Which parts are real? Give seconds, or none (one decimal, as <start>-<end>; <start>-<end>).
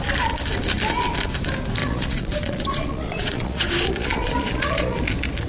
0.0-1.8; 5.0-5.5